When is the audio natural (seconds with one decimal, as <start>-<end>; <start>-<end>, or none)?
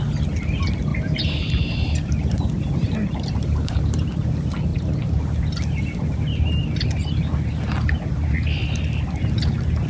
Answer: 0.0-0.9; 4.3-4.7; 5.2-9.9